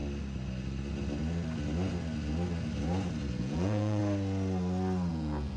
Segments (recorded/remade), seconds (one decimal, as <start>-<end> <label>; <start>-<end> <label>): 0.0-3.4 recorded; 3.4-4.0 remade; 4.0-5.1 recorded; 5.1-5.6 remade